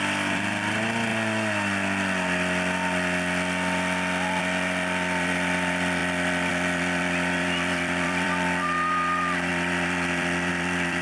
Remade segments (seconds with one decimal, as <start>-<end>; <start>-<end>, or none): 0.0-1.1; 4.4-11.0

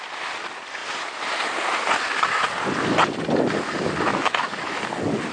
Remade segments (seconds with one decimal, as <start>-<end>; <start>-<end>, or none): 4.1-4.8

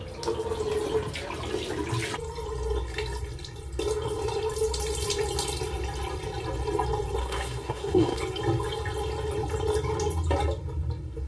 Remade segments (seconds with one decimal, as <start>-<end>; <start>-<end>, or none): 7.2-8.2

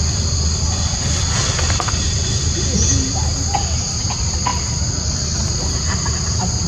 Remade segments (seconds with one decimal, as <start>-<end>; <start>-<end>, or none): 4.5-5.5